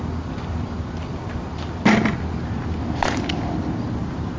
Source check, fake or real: real